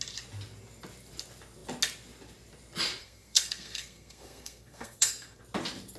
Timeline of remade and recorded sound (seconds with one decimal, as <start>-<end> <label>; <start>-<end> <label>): 0.0-3.0 recorded; 3.0-5.4 remade; 5.4-6.0 recorded